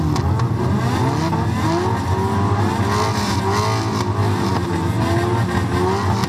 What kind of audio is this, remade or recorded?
recorded